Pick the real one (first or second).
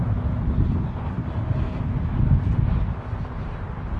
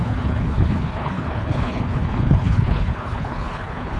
first